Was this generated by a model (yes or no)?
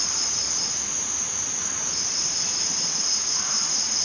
no